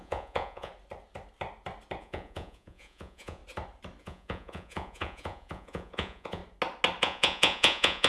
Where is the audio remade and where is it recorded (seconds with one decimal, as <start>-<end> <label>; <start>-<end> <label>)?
0.0-0.7 remade; 0.7-2.0 recorded; 2.0-3.4 remade; 3.4-4.0 recorded; 4.0-6.4 remade; 6.4-7.0 recorded; 7.0-8.1 remade